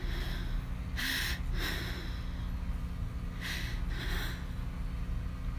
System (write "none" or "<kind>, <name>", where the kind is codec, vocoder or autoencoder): none